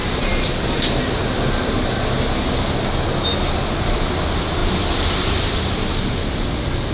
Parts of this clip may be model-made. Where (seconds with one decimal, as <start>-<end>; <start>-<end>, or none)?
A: none